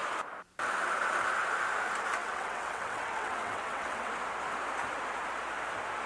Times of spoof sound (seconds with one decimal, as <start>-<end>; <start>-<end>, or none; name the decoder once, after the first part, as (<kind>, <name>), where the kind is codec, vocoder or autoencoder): 2.2-4.1 (vocoder, WaveNeXt)